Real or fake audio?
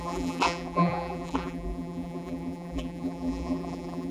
fake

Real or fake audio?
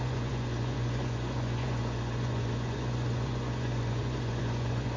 fake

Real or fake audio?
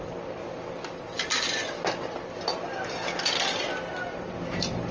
real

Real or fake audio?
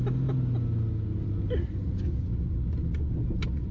real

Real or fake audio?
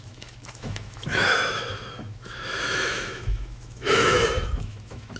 fake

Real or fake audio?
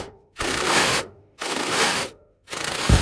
fake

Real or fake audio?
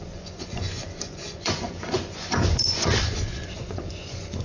fake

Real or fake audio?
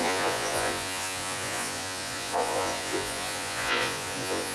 fake